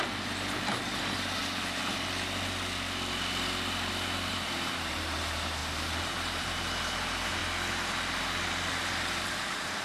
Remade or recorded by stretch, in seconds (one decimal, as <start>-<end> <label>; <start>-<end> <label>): 0.0-1.4 remade; 1.4-4.3 recorded; 4.3-7.4 remade; 7.4-8.7 recorded; 8.7-9.8 remade